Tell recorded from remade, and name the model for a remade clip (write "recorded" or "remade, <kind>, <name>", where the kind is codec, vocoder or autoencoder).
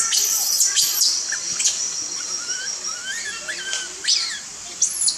recorded